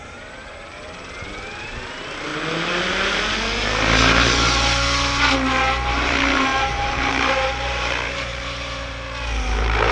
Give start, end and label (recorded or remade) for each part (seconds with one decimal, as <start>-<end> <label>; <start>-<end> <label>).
0.0-2.3 remade; 2.3-5.9 recorded; 5.9-9.9 remade

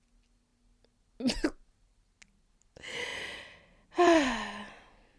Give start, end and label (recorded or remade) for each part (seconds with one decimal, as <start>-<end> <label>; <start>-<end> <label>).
0.0-5.2 recorded

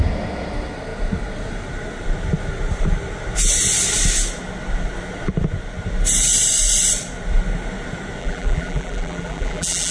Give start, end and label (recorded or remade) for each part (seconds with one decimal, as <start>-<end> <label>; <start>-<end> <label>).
0.0-8.2 recorded; 8.2-9.9 remade

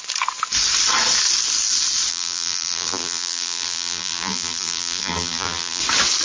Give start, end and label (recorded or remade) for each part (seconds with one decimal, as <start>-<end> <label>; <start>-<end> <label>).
0.0-2.1 recorded; 2.1-5.8 remade; 5.8-6.2 recorded

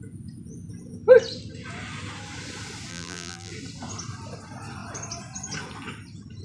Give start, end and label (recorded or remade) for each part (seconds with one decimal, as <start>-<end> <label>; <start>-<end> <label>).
0.0-2.9 recorded; 2.9-3.5 remade; 3.5-6.4 recorded

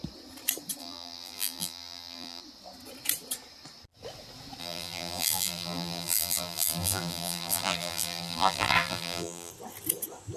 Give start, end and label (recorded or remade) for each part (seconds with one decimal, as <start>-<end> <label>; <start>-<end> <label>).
0.0-0.8 recorded; 0.8-2.4 remade; 2.4-4.6 recorded; 4.6-9.5 remade; 9.5-10.4 recorded